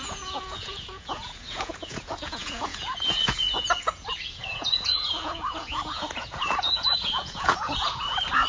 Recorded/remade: remade